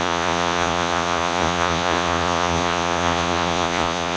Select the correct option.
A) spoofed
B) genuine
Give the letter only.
A